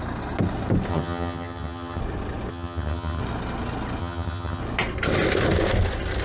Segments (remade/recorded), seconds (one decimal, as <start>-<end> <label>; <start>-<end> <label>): 0.0-0.9 recorded; 0.9-2.0 remade; 2.0-2.5 recorded; 2.5-3.2 remade; 3.2-4.0 recorded; 4.0-4.6 remade; 4.6-6.2 recorded